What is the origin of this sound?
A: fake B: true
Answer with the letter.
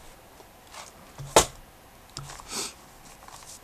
B